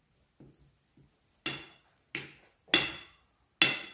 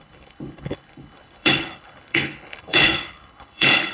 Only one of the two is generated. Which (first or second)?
second